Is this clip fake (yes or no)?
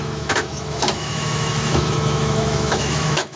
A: yes